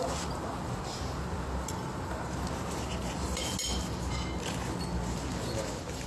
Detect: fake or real real